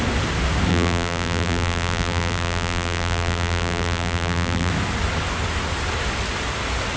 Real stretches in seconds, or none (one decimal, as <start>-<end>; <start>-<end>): 0.0-0.7; 4.7-7.0